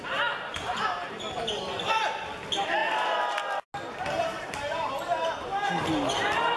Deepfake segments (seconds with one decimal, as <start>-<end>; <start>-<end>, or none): none